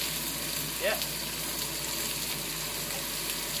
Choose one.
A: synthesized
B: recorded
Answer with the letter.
B